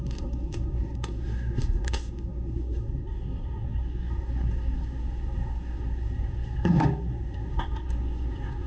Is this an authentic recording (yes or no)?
no